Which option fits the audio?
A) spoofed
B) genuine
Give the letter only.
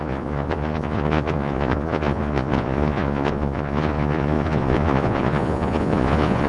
A